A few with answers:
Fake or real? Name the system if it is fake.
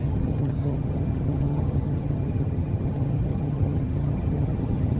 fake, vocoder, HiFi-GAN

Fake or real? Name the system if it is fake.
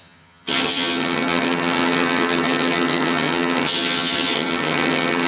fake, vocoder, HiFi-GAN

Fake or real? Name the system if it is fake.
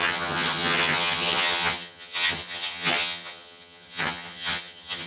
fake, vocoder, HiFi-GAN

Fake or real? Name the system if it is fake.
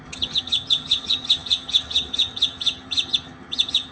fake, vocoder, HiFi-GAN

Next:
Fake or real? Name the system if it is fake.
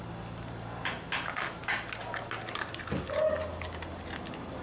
real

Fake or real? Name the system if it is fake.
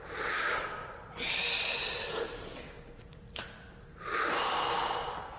real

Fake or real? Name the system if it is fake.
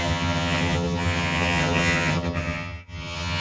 fake, vocoder, HiFi-GAN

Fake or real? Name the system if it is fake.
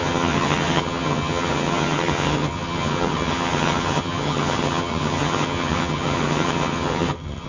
fake, vocoder, HiFi-GAN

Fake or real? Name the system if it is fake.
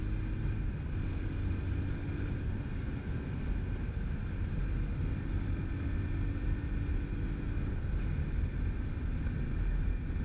real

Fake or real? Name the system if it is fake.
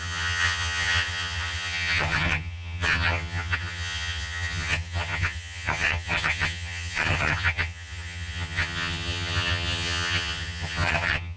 fake, vocoder, HiFi-GAN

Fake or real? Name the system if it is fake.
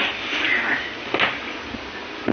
real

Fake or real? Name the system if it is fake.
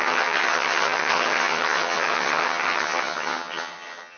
fake, vocoder, HiFi-GAN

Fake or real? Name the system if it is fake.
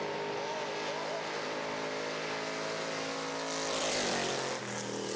real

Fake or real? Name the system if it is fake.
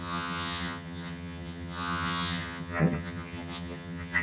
fake, vocoder, HiFi-GAN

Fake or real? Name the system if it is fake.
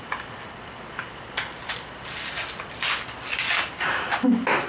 real